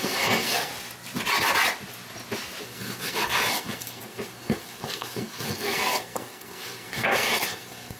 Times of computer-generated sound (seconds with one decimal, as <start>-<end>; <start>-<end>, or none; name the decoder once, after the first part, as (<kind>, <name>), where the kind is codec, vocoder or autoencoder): 0.0-0.7 (codec, SNAC); 2.6-8.0